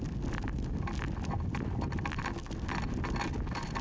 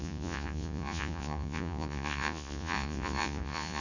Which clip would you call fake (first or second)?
second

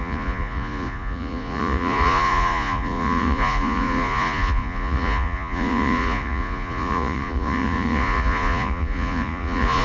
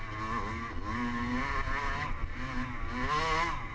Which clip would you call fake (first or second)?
first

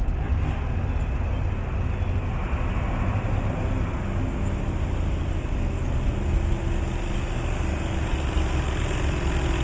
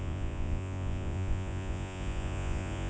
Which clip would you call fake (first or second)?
second